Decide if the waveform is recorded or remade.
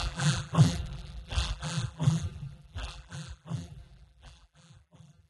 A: remade